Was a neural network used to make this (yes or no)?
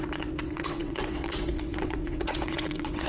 yes